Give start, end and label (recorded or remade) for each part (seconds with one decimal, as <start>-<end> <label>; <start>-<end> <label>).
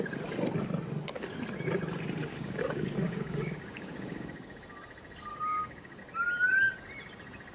0.0-2.2 recorded; 2.2-4.6 remade; 4.6-5.3 recorded; 5.3-6.0 remade; 6.0-7.5 recorded